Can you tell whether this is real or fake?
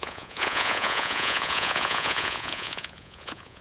fake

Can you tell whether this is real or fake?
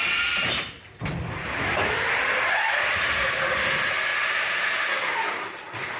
real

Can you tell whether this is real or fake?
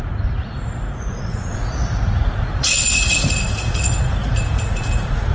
fake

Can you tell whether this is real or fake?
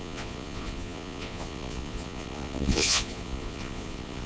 fake